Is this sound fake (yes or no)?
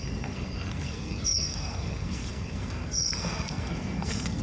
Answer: yes